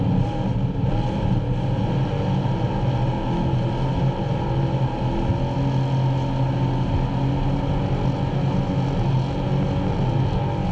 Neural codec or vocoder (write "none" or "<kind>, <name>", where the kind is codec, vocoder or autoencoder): none